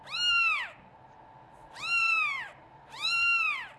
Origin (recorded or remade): remade